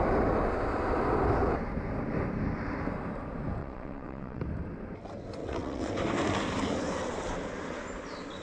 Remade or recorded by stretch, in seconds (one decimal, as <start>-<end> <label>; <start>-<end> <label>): 0.0-3.6 recorded; 3.6-4.4 remade; 4.4-5.4 recorded; 5.4-5.9 remade; 5.9-8.4 recorded